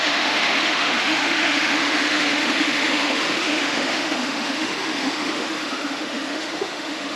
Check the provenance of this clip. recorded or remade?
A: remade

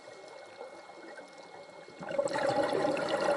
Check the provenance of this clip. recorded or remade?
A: recorded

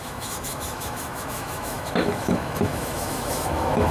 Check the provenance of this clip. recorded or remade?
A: remade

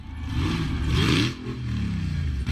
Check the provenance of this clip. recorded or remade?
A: recorded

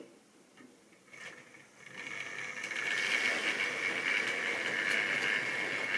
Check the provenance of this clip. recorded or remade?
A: recorded